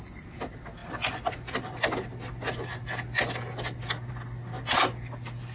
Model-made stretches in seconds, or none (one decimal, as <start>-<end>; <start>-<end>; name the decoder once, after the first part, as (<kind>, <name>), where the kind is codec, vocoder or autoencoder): none